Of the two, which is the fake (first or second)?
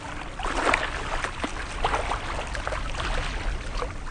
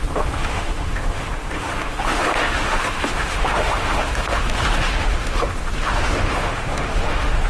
second